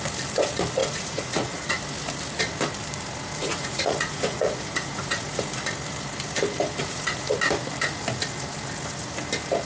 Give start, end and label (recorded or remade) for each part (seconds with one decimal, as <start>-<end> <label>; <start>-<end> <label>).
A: 0.0-0.8 recorded; 0.8-1.8 remade; 1.8-3.4 recorded; 3.4-5.4 remade; 5.4-6.8 recorded; 6.8-7.3 remade; 7.3-9.7 recorded